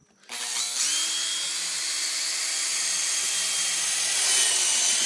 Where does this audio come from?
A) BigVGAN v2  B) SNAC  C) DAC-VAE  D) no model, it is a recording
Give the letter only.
D